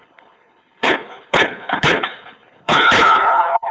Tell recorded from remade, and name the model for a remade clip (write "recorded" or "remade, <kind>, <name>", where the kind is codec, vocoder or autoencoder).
remade, codec, HILCodec